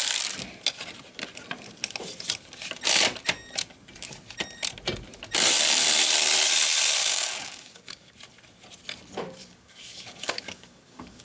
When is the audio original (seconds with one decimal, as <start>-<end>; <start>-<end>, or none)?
0.0-7.0; 8.1-9.4